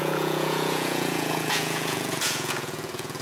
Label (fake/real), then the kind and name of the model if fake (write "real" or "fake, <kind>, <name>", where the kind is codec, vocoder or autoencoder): fake, vocoder, Vocos